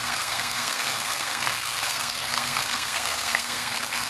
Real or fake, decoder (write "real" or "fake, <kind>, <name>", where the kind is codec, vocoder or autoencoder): fake, codec, SNAC